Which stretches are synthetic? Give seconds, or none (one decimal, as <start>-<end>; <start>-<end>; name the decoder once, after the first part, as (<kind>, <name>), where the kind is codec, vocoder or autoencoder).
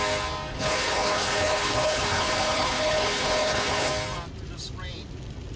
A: 0.5-3.9 (codec, HILCodec)